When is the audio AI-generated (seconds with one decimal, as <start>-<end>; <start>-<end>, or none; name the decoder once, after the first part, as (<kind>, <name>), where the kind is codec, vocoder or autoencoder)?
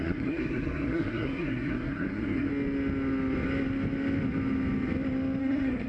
0.0-2.5 (codec, SNAC); 5.4-5.9